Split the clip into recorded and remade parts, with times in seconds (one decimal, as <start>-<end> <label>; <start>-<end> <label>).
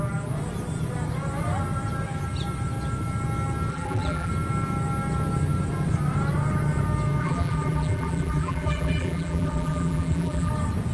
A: 0.0-3.7 recorded; 3.7-4.3 remade; 4.3-7.2 recorded; 7.2-10.5 remade; 10.5-10.9 recorded